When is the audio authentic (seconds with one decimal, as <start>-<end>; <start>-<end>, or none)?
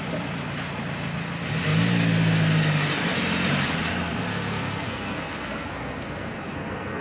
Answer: 0.0-4.3